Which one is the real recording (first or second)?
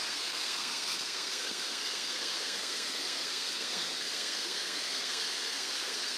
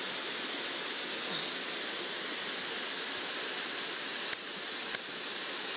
second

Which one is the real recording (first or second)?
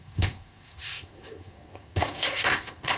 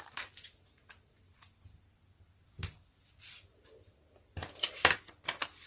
second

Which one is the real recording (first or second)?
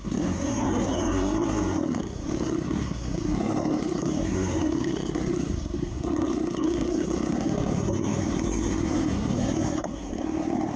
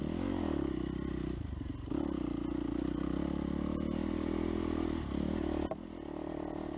second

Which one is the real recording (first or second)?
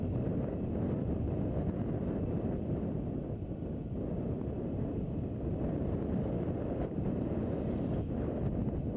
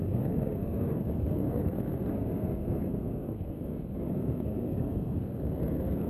first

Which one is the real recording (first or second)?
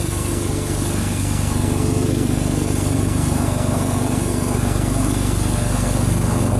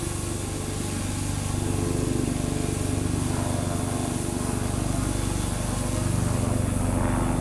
second